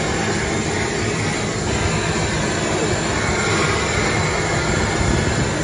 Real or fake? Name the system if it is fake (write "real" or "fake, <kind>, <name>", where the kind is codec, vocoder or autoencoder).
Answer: real